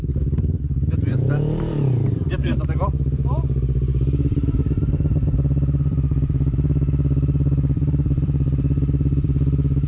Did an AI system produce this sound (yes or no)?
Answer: yes